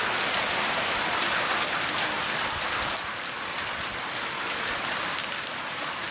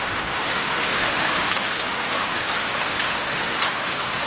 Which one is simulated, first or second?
second